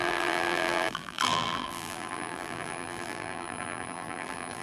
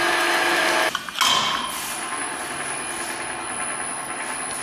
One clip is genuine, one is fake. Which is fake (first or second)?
first